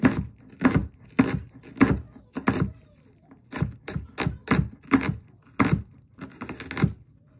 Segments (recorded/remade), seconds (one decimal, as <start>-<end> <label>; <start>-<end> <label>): 0.0-7.4 recorded